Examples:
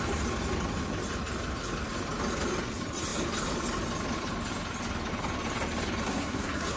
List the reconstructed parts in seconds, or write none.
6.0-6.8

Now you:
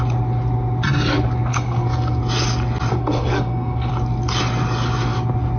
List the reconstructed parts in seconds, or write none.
1.5-2.2; 2.9-3.9